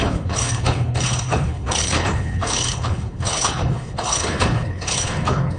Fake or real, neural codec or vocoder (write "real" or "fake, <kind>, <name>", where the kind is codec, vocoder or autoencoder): fake, codec, HILCodec